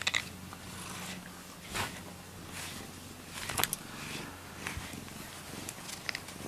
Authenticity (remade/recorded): recorded